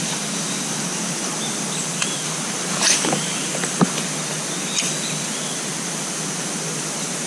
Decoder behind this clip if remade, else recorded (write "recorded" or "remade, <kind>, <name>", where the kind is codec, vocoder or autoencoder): recorded